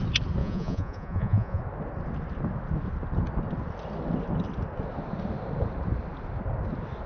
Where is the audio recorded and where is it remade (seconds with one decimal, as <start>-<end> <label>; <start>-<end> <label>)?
0.0-0.4 recorded; 0.4-1.6 remade; 1.6-7.1 recorded

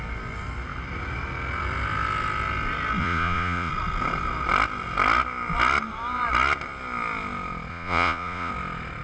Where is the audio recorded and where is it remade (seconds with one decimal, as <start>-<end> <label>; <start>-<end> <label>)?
0.0-3.0 recorded; 3.0-3.7 remade; 3.7-7.7 recorded; 7.7-8.5 remade; 8.5-9.0 recorded

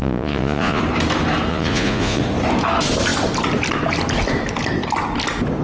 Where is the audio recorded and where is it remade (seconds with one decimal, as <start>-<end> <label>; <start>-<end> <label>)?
0.0-0.8 remade; 0.8-1.5 recorded; 1.5-2.2 remade; 2.2-5.6 recorded